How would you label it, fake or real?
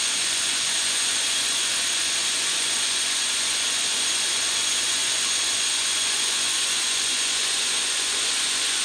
fake